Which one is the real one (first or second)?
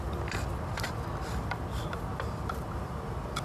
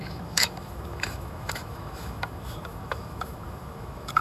first